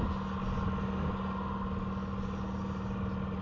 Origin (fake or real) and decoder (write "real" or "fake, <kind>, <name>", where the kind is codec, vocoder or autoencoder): real